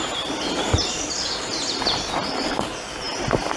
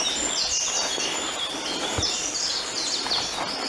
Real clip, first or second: second